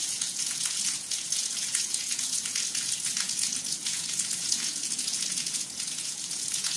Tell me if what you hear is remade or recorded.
remade